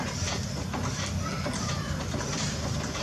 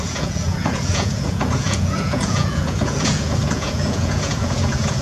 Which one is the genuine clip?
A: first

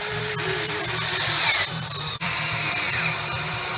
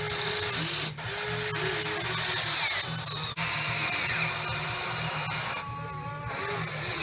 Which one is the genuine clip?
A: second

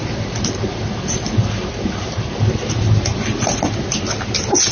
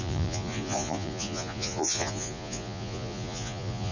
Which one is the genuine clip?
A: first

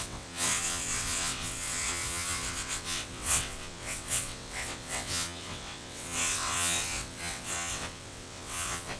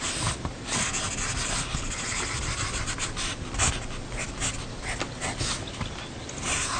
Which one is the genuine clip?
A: second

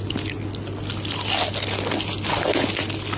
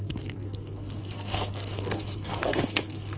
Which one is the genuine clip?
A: first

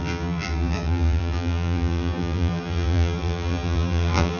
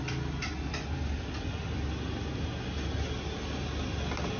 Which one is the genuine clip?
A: second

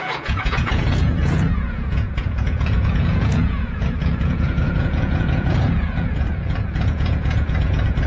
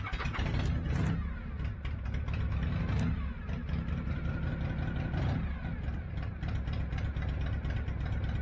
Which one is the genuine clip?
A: second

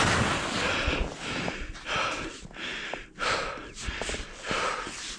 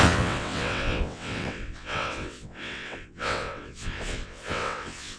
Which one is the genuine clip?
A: first